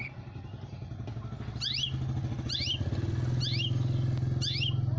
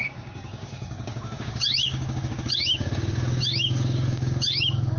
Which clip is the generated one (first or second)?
second